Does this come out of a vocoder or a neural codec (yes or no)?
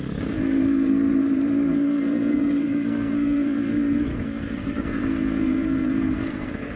yes